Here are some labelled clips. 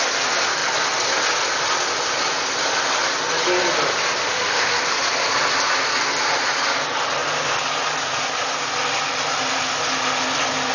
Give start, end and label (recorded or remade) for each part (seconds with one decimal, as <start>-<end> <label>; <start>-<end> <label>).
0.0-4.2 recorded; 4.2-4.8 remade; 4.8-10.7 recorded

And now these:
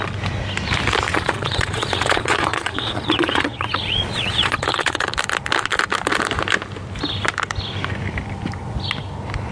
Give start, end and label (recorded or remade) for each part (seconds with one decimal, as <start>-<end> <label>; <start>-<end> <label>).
0.0-1.1 recorded; 1.1-5.1 remade; 5.1-9.5 recorded

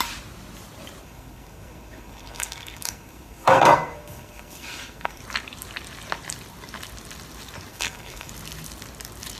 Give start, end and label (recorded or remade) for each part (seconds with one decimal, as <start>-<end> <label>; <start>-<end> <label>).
0.0-1.0 recorded; 1.0-5.2 remade; 5.2-7.7 recorded; 7.7-8.3 remade; 8.3-9.4 recorded

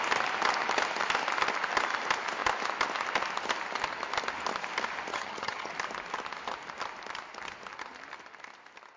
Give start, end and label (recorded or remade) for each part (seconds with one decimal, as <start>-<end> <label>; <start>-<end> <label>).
0.0-5.1 recorded; 5.1-5.7 remade; 5.7-9.0 recorded

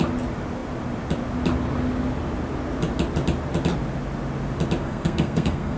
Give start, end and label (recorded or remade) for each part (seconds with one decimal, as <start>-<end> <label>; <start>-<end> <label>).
0.0-4.8 recorded; 4.8-5.8 remade

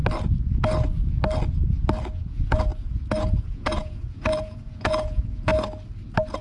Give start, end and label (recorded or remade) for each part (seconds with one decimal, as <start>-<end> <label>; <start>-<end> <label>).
0.0-2.2 recorded; 2.2-2.7 remade; 2.7-3.2 recorded; 3.2-5.5 remade; 5.5-6.4 recorded

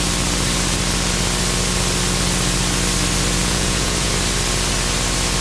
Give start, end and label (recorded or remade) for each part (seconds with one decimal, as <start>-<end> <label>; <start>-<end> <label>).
0.0-3.4 recorded; 3.4-4.1 remade; 4.1-5.4 recorded